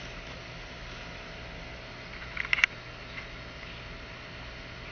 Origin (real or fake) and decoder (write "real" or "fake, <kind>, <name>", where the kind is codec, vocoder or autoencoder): real